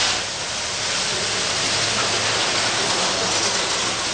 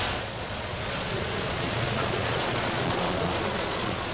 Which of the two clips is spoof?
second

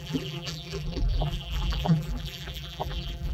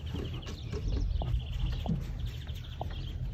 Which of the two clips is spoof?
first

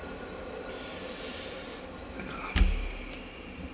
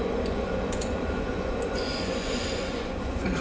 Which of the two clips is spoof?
second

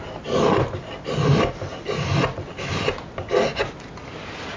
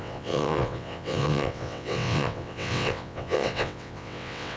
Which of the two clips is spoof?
second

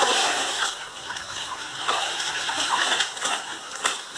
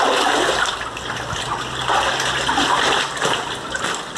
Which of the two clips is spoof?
first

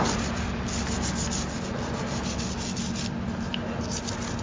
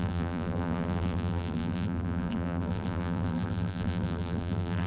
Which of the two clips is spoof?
second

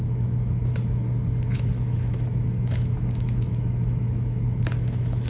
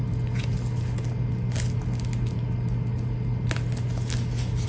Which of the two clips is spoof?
first